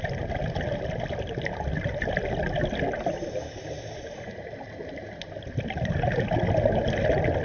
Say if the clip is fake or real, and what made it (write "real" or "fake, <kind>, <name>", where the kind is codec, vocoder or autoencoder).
real